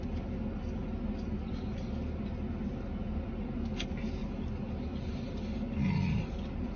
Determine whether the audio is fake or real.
real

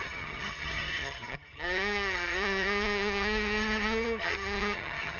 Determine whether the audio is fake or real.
fake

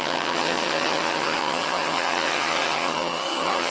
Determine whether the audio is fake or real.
fake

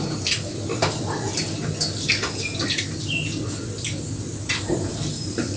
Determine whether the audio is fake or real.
real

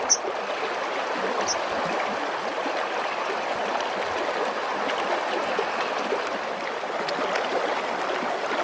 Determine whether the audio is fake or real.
real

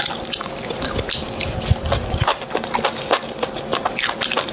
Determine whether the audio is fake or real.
real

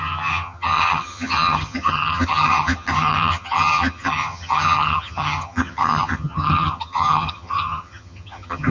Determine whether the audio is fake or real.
fake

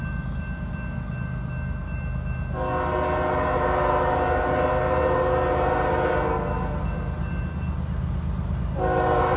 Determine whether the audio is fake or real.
real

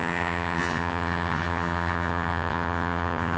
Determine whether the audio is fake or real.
fake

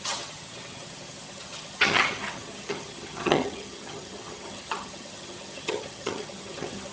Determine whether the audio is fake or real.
fake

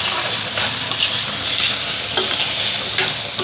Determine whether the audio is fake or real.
real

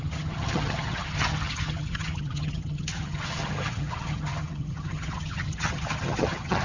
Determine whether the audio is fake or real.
fake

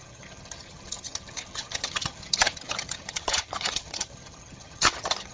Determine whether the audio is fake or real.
fake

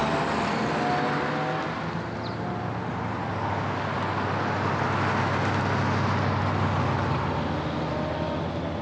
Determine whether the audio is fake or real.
real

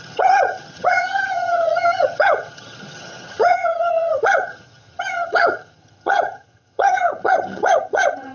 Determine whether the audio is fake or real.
fake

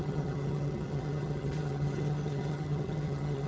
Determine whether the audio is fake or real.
fake